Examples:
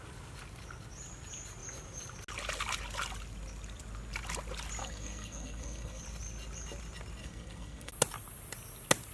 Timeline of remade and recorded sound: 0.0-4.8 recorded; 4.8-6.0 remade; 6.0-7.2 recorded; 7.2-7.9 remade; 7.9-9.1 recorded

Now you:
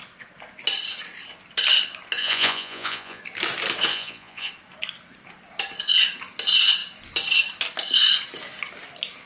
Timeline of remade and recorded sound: 0.0-2.2 recorded; 2.2-3.2 remade; 3.2-3.9 recorded; 3.9-4.5 remade; 4.5-9.3 recorded

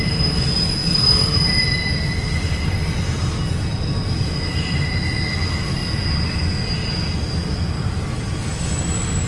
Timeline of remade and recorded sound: 0.0-0.8 recorded; 0.8-2.9 remade; 2.9-9.3 recorded

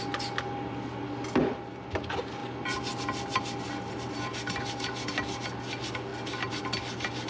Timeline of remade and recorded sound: 0.0-7.3 recorded

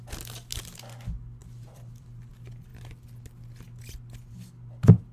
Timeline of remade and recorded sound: 0.0-1.4 recorded; 1.4-2.3 remade; 2.3-5.1 recorded

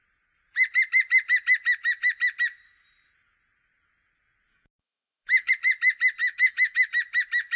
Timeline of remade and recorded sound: 0.0-4.5 recorded; 4.5-5.5 remade; 5.5-6.2 recorded; 6.2-6.9 remade; 6.9-7.6 recorded

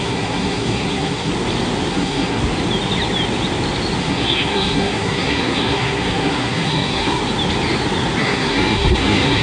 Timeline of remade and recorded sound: 0.0-1.3 remade; 1.3-1.9 recorded; 1.9-2.4 remade; 2.4-4.0 recorded; 4.0-7.2 remade; 7.2-8.2 recorded; 8.2-9.4 remade

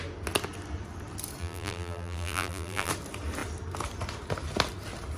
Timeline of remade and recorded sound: 0.0-1.4 recorded; 1.4-2.9 remade; 2.9-5.2 recorded